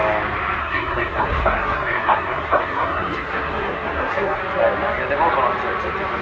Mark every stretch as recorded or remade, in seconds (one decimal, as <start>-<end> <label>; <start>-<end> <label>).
0.0-0.6 recorded; 0.6-4.4 remade; 4.4-6.2 recorded